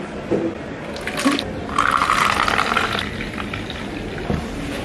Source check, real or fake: real